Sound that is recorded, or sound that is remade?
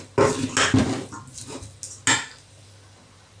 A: recorded